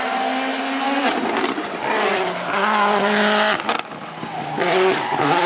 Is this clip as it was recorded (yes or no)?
yes